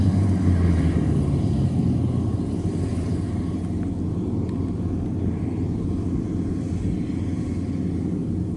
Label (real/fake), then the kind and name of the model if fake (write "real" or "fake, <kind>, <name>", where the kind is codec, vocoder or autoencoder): real